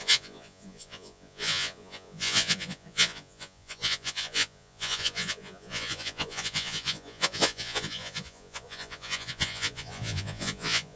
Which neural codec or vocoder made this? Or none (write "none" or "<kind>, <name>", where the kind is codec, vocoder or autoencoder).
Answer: vocoder, Vocos